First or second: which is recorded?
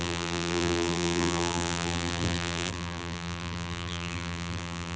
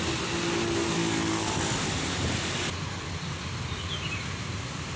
second